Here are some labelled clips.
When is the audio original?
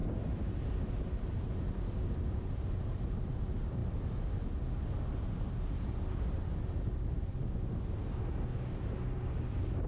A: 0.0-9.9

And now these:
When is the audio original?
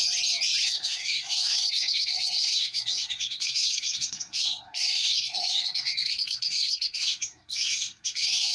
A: 0.0-0.6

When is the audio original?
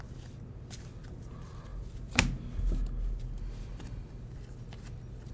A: 0.0-5.3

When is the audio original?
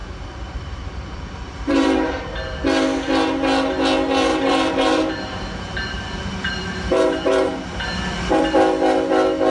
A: 2.2-4.3; 8.4-9.5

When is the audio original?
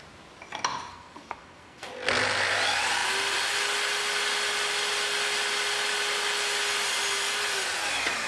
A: 0.0-0.9; 1.9-8.3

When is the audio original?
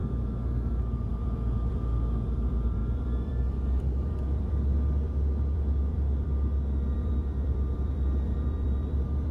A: 0.0-1.1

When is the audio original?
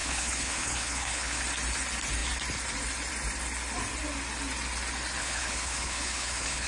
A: 1.4-5.2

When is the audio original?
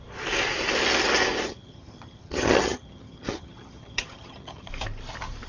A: 0.0-1.5; 4.7-5.5